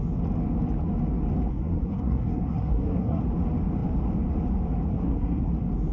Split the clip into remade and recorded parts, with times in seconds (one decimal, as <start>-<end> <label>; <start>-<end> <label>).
0.0-1.5 recorded; 1.5-3.2 remade; 3.2-4.9 recorded; 4.9-5.5 remade; 5.5-5.9 recorded